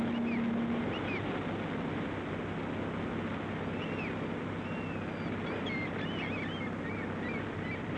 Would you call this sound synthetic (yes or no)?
no